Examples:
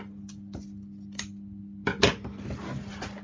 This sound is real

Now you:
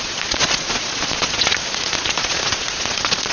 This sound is fake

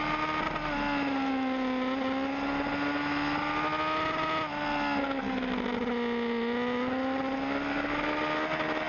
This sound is real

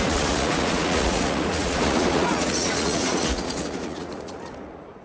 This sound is fake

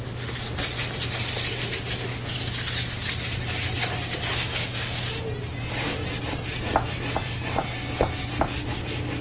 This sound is real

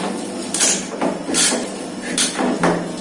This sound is real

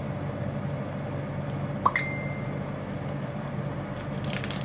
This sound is real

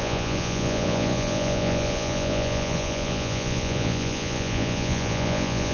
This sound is fake